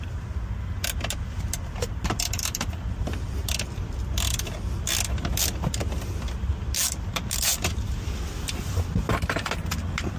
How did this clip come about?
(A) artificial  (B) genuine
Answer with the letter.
B